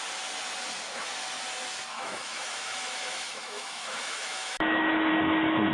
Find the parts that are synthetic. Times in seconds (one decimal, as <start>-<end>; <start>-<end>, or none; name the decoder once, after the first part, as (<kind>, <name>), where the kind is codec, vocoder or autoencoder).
1.9-5.1 (autoencoder, DAC-VAE)